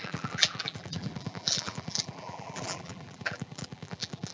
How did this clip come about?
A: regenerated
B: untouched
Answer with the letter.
A